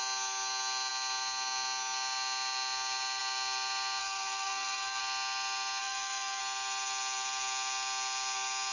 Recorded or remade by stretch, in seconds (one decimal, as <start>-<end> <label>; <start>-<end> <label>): 0.0-4.0 recorded; 4.0-5.0 remade; 5.0-5.8 recorded; 5.8-6.4 remade; 6.4-8.7 recorded